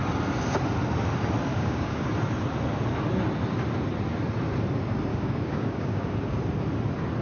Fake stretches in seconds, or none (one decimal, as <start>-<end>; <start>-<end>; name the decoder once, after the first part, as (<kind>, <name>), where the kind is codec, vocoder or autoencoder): 1.5-2.1 (codec, DAC); 5.1-6.4